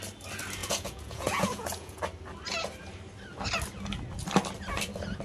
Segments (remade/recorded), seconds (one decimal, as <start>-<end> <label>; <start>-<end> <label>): 0.0-0.6 recorded; 0.6-2.0 remade; 2.0-5.2 recorded